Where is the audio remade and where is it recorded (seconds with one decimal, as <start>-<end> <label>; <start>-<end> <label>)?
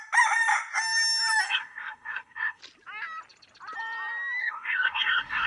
0.0-1.4 recorded; 1.4-2.6 remade; 2.6-4.4 recorded; 4.4-5.5 remade